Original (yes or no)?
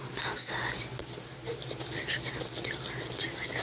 yes